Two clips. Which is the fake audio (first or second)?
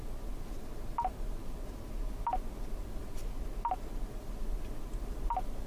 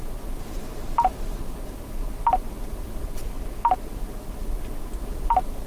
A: second